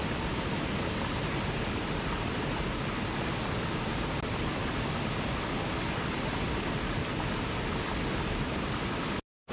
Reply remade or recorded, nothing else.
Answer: recorded